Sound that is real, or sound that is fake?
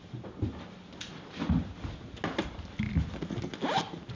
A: real